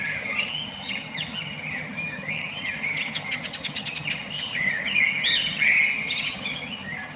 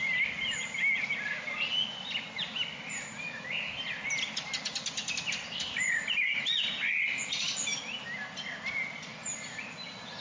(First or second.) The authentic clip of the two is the second